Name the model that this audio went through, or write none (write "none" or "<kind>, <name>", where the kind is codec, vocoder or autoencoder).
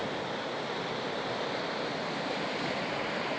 none